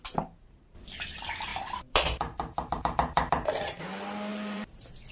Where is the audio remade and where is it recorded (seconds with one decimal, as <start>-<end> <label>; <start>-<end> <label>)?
0.0-1.5 recorded; 1.5-3.8 remade; 3.8-4.3 recorded; 4.3-5.1 remade